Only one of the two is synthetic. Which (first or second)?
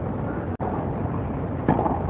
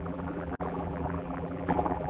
second